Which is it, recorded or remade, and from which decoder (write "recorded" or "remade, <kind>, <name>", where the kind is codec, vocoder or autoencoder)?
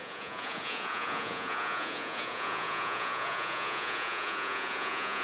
remade, vocoder, Vocos